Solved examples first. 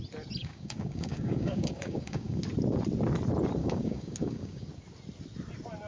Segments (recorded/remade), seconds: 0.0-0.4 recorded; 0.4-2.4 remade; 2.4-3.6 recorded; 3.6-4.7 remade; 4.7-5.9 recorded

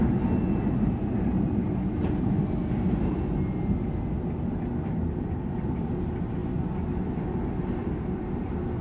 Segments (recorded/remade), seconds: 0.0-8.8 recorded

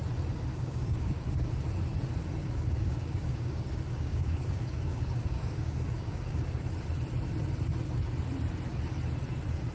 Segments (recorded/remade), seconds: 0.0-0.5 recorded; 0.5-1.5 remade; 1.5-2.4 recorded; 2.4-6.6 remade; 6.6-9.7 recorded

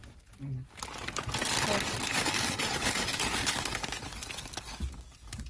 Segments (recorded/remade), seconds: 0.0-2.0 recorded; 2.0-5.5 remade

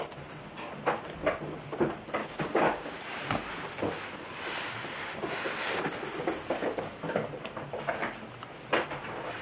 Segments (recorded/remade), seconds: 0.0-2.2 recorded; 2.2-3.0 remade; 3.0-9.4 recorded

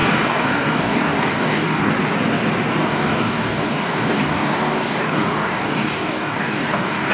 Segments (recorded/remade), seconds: 0.0-1.9 remade; 1.9-2.8 recorded; 2.8-7.1 remade